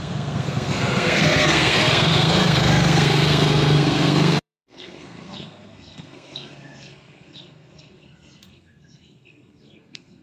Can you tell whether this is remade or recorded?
remade